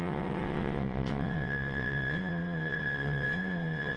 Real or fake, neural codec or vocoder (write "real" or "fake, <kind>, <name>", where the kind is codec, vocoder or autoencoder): fake, vocoder, WaveNeXt